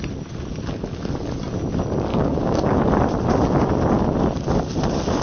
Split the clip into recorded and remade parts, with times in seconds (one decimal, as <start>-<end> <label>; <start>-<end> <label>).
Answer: 0.0-2.1 recorded; 2.1-2.8 remade; 2.8-5.2 recorded